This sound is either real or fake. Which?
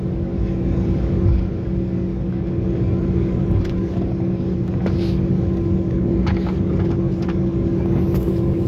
fake